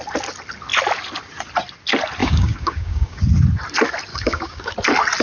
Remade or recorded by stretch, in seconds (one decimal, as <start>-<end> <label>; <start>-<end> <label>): 0.0-2.2 recorded; 2.2-3.2 remade; 3.2-4.1 recorded; 4.1-4.7 remade; 4.7-5.2 recorded